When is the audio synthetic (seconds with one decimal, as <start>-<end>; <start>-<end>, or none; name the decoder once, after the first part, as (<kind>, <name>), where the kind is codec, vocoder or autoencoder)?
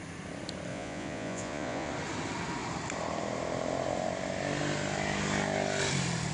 0.7-1.9 (vocoder, Vocos)